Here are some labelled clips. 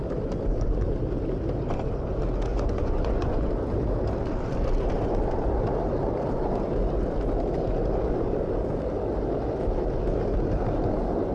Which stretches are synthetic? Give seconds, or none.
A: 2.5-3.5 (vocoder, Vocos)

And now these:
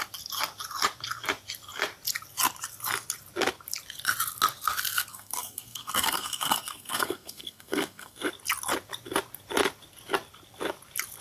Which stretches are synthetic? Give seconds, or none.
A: 5.1-8.3 (codec, SNAC)